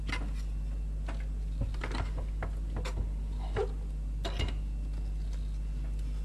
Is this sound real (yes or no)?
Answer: yes